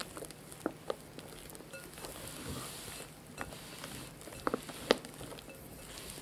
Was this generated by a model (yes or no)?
no